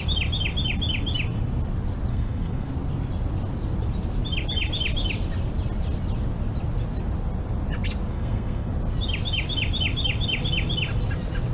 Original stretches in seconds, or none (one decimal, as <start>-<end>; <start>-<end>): 0.0-2.1; 2.7-8.1; 8.7-11.5